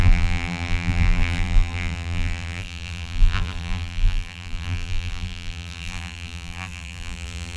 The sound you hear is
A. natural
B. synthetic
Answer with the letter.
B